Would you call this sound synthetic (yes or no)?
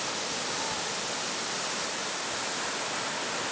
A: no